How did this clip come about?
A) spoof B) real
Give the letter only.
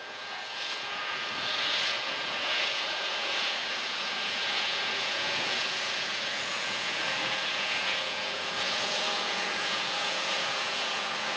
A